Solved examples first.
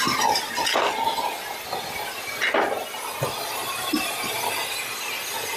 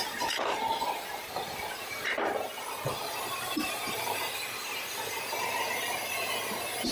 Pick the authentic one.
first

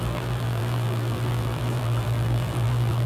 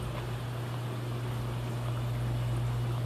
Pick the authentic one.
second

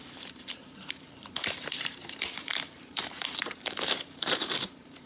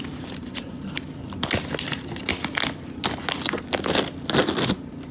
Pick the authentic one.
second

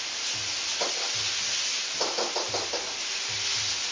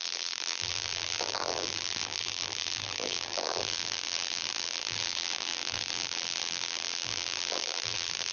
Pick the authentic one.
first